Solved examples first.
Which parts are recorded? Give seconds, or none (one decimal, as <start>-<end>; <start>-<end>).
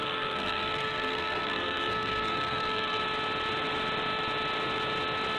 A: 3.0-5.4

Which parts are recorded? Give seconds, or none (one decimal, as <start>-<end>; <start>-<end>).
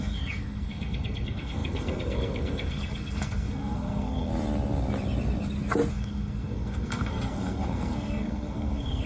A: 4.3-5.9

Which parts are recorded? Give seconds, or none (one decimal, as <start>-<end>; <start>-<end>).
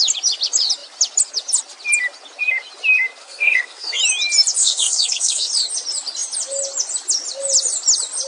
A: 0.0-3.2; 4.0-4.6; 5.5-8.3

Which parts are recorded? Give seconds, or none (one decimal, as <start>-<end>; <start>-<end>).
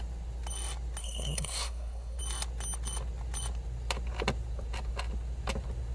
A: 0.0-1.0; 2.2-5.9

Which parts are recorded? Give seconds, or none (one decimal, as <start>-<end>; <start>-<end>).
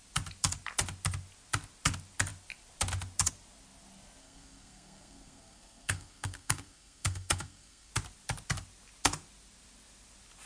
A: 0.0-4.2; 7.9-10.5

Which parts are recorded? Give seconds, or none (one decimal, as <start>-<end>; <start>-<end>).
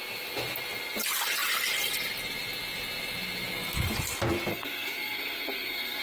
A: 0.0-4.5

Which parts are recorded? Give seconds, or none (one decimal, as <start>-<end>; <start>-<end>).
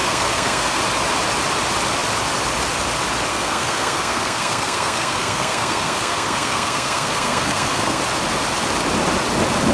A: 0.8-3.3; 8.0-9.7